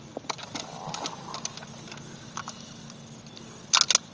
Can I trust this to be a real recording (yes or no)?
yes